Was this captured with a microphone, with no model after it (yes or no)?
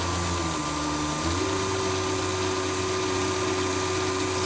yes